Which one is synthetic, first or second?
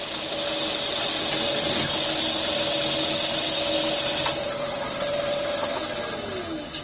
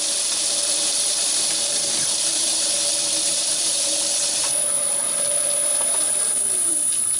second